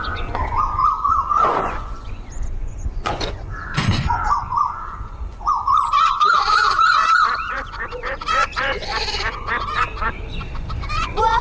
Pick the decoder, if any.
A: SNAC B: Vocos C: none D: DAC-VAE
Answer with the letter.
B